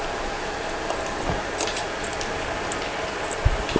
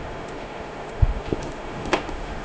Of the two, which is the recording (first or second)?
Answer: first